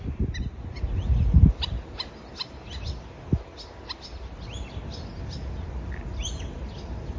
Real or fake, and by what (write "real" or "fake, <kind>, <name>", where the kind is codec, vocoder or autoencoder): real